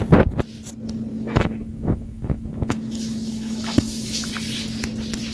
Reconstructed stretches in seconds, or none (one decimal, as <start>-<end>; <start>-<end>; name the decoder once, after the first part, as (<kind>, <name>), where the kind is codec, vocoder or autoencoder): 1.1-4.3 (autoencoder, DAC-VAE)